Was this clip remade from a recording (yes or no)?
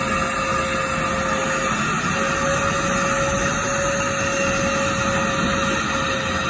no